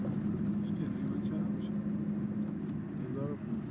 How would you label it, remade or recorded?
recorded